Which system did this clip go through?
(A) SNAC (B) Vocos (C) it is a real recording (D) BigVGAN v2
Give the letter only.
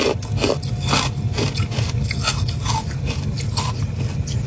C